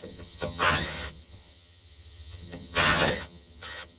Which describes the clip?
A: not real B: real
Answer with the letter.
A